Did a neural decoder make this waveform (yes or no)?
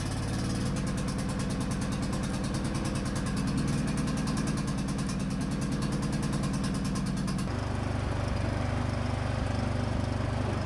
no